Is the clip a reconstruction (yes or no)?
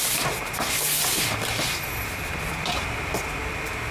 yes